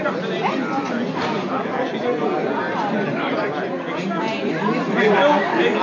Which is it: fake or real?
real